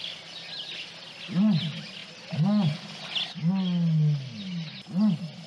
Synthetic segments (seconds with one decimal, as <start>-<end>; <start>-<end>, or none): none